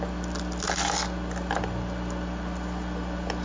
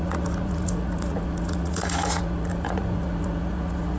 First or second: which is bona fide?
first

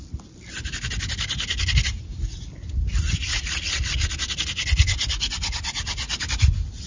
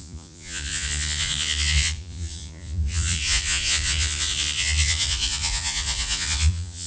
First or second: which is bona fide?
first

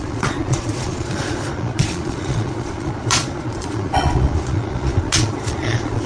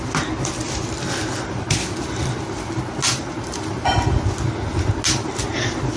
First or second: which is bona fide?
second